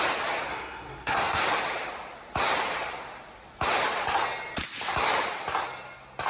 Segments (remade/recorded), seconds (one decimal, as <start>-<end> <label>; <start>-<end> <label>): 0.0-0.5 recorded; 0.5-1.4 remade; 1.4-6.3 recorded